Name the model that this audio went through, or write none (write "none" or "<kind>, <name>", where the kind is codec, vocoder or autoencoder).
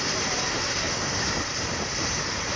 vocoder, BigVGAN v2